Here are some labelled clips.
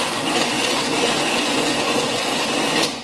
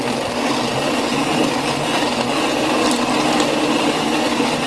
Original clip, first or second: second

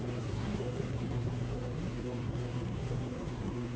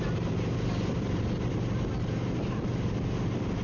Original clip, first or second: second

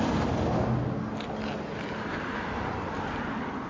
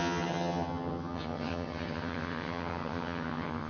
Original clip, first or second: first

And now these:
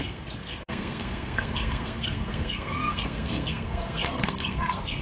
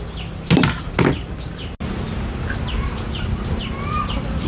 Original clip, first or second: second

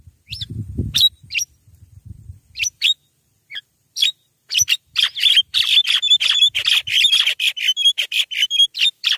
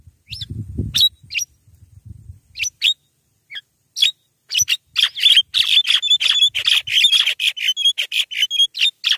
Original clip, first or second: second